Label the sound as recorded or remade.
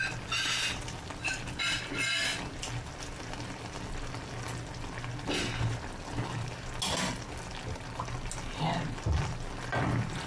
recorded